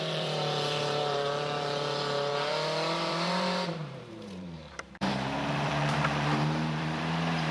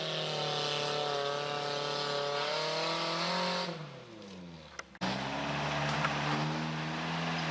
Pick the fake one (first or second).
first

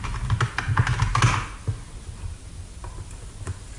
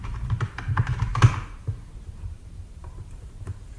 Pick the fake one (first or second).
second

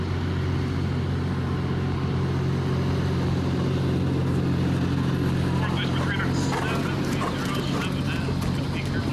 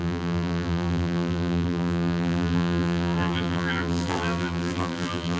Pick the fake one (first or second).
second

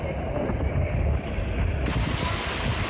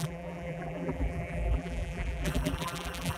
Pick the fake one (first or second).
second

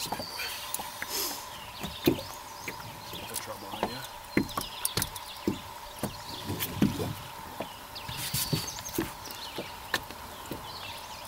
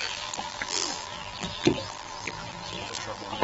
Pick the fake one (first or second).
second